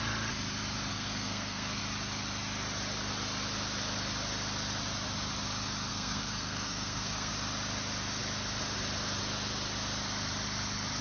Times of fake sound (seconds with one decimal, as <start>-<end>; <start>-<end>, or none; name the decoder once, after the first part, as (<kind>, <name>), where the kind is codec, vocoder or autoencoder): 0.9-1.8 (codec, SNAC); 5.9-7.3